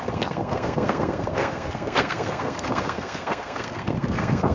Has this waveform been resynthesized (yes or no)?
yes